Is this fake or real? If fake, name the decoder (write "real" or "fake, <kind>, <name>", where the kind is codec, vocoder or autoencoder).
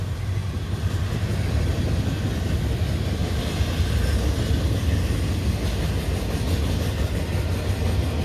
real